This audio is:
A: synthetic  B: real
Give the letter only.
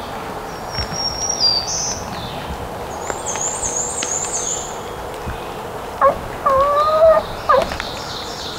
B